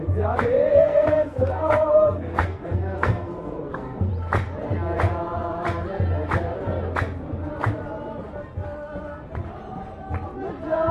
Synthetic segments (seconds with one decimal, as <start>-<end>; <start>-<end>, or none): 0.7-4.1